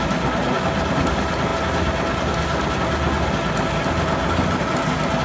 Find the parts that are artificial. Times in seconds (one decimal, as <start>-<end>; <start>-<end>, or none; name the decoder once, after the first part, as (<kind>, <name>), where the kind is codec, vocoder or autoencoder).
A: none